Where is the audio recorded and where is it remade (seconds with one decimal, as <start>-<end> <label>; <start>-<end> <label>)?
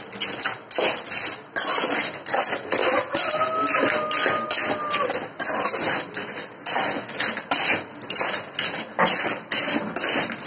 0.0-10.5 recorded